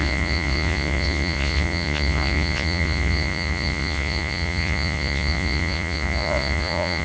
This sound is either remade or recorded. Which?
remade